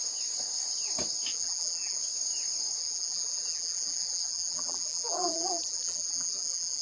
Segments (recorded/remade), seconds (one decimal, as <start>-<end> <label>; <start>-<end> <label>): 0.0-1.3 recorded; 1.3-2.0 remade; 2.0-2.8 recorded; 2.8-6.8 remade